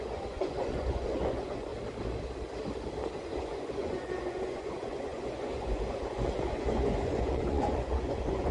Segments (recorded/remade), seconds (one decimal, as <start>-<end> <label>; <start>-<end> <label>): 0.0-1.7 remade; 1.7-3.1 recorded; 3.1-8.5 remade